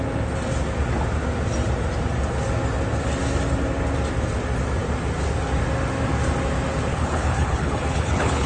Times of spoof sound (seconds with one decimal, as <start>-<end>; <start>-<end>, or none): 6.9-8.5